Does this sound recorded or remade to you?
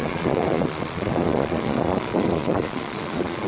remade